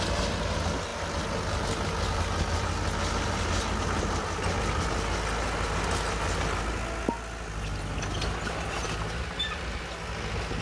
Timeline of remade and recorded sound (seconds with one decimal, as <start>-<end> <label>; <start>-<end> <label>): 0.0-10.6 recorded